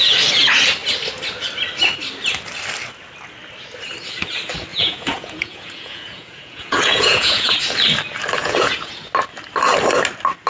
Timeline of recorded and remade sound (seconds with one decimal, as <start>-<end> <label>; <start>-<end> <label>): 0.0-4.7 recorded; 4.7-7.5 remade; 7.5-8.4 recorded; 8.4-8.9 remade; 8.9-10.5 recorded